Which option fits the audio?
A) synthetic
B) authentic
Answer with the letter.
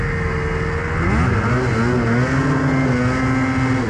B